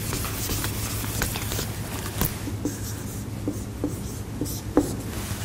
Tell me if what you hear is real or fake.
real